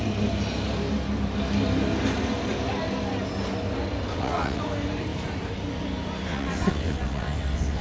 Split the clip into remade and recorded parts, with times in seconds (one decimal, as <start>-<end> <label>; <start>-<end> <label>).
0.0-4.1 recorded; 4.1-4.6 remade; 4.6-6.3 recorded; 6.3-7.8 remade